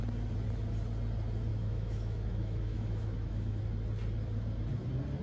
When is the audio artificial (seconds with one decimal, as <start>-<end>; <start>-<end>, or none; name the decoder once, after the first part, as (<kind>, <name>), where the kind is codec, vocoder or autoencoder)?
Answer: 1.5-3.6 (autoencoder, DAC-VAE)